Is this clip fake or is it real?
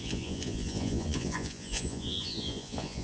fake